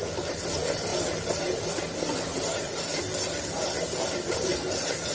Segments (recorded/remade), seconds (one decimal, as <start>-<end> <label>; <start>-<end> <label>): 0.0-5.1 recorded